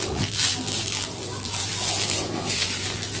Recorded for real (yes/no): no